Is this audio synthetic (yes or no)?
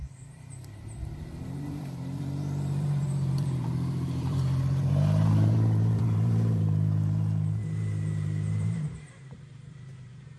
yes